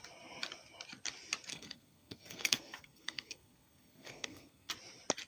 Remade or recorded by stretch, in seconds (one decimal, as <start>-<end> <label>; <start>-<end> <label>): 0.0-1.5 recorded; 1.5-4.7 remade; 4.7-5.3 recorded